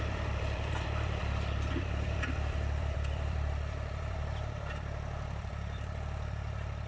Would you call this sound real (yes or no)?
no